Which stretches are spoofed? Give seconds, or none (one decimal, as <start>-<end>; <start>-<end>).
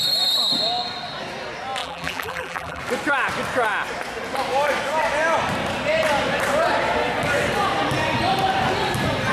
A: 1.8-2.8